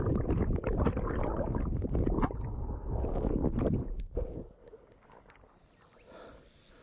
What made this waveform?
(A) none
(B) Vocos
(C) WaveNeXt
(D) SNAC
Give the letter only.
A